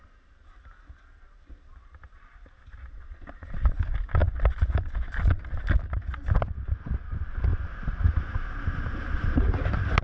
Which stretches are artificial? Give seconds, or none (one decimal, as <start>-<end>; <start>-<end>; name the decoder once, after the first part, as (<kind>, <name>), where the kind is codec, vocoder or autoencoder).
7.5-8.2 (vocoder, BigVGAN v2)